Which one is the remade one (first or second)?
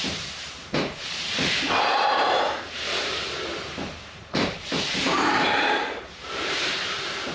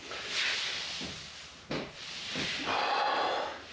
first